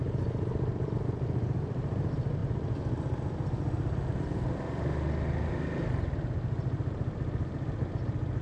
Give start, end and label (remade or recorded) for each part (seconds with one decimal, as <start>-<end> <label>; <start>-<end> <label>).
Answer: 0.0-8.4 recorded